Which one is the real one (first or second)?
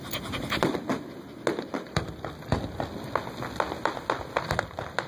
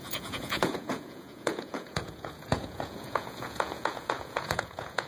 first